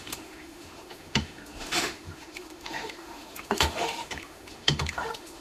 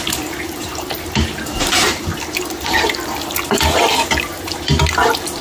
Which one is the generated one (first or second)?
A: first